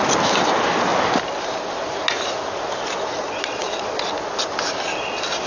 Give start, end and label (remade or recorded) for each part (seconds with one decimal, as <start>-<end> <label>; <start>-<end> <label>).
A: 0.0-3.2 recorded; 3.2-4.1 remade; 4.1-5.5 recorded